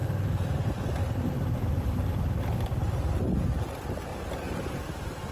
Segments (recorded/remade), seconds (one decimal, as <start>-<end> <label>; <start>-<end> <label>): 0.0-4.1 remade; 4.1-4.7 recorded; 4.7-5.3 remade